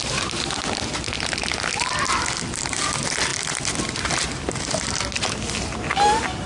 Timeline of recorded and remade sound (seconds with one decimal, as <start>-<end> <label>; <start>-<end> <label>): 0.0-6.5 recorded